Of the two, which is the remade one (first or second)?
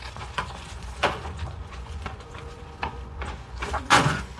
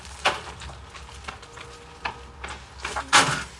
first